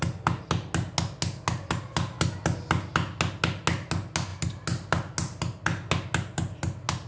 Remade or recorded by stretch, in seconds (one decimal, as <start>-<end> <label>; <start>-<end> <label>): 0.0-7.1 recorded